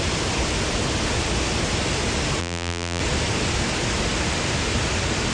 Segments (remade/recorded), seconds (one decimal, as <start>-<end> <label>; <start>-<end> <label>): 0.0-2.4 recorded; 2.4-3.0 remade; 3.0-5.3 recorded

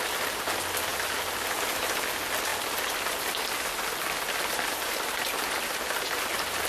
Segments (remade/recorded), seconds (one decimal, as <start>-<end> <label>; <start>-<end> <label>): 0.0-6.7 recorded

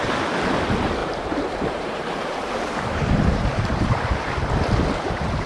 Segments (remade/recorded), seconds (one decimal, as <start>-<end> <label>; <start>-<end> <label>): 0.0-1.0 recorded; 1.0-4.3 remade; 4.3-5.5 recorded

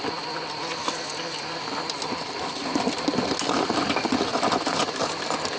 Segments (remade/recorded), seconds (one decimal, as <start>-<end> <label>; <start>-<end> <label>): 0.0-4.3 recorded; 4.3-5.0 remade; 5.0-5.6 recorded

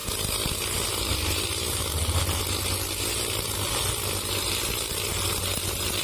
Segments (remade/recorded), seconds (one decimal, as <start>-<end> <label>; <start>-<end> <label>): 0.0-1.0 recorded; 1.0-1.5 remade; 1.5-5.1 recorded; 5.1-6.0 remade